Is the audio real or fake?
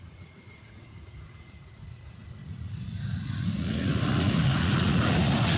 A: fake